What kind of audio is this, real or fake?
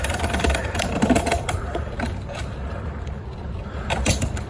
fake